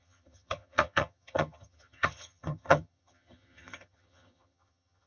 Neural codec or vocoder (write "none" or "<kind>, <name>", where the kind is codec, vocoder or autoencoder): vocoder, HiFi-GAN